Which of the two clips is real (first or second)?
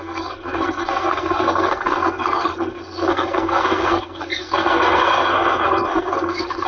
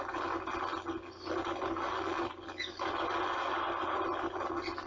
second